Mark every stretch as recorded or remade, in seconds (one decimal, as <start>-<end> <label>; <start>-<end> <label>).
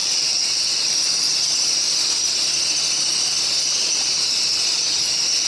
0.0-0.8 remade; 0.8-5.5 recorded